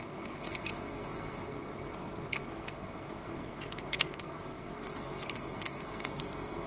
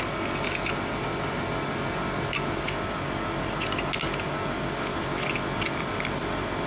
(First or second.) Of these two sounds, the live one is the second